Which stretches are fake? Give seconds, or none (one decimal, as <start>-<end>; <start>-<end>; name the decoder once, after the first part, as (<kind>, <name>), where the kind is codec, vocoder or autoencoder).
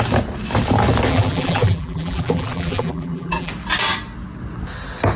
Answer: 1.1-3.5 (vocoder, BigVGAN v2)